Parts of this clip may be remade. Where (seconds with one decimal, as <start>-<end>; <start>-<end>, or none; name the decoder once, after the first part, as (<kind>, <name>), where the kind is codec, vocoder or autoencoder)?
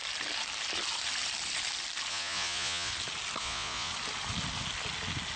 2.1-2.9 (vocoder, Vocos); 3.4-3.9